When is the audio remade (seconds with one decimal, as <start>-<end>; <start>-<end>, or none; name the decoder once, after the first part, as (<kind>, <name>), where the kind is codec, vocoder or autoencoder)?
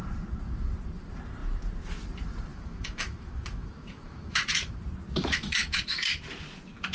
2.5-4.7 (autoencoder, DAC-VAE); 5.2-5.8